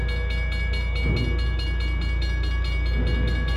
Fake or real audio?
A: real